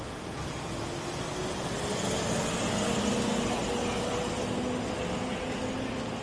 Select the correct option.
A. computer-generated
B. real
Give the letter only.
B